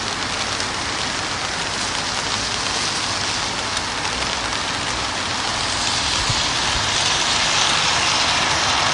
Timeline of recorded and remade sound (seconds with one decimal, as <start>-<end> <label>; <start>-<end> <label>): 0.0-8.9 recorded